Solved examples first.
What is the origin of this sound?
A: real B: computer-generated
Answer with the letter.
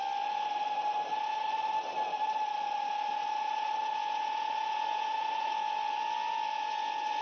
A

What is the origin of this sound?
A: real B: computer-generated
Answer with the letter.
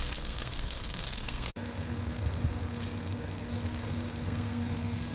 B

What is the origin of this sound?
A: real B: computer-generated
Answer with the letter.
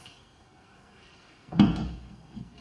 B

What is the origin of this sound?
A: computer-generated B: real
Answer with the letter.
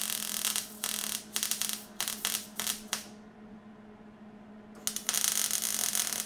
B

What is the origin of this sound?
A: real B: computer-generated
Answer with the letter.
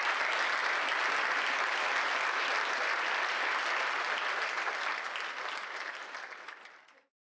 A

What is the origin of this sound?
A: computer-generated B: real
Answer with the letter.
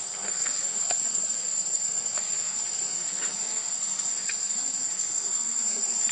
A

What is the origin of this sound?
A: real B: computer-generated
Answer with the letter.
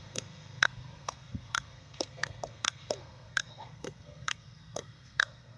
B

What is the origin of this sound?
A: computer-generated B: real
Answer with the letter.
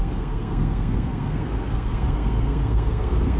A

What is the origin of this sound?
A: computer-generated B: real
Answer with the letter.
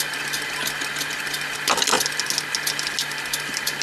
B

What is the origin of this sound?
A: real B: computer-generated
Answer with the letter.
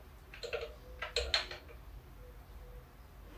A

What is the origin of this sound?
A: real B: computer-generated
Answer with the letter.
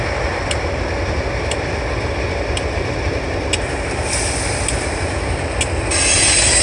A